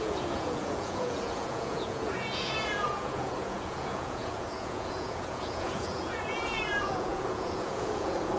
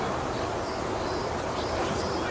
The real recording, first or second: second